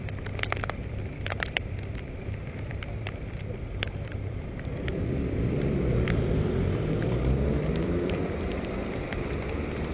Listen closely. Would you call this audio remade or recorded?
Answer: remade